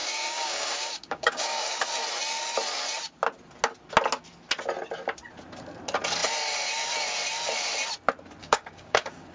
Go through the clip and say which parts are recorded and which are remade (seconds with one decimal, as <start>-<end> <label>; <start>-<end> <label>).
0.0-1.8 remade; 1.8-8.4 recorded; 8.4-9.3 remade